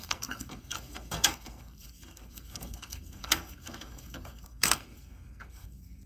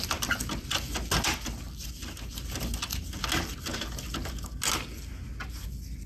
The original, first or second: second